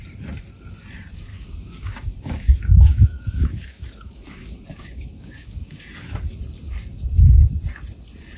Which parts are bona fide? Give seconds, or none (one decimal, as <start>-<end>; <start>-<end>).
0.0-1.3; 5.8-8.4